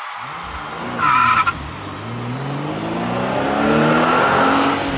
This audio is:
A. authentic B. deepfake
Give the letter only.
A